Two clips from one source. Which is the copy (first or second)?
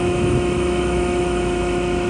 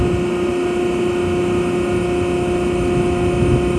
first